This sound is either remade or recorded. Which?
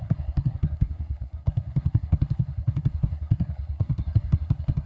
remade